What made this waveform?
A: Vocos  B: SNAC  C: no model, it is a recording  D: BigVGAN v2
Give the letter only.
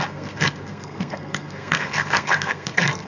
B